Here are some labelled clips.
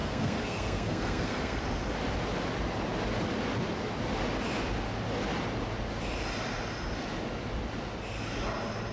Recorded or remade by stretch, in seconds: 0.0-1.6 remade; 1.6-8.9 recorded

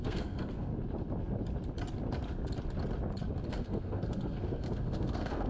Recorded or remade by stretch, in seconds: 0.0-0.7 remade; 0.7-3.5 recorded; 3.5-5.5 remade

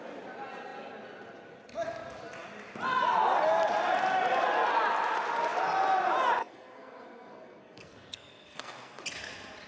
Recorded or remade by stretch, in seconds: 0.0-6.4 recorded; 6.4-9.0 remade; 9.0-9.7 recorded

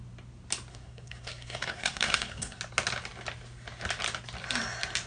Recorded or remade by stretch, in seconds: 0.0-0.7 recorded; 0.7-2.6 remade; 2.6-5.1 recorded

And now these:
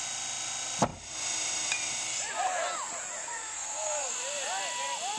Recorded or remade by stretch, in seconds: 0.0-3.2 recorded; 3.2-4.1 remade; 4.1-5.2 recorded

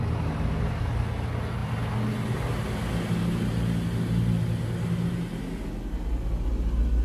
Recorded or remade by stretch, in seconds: 0.0-7.0 recorded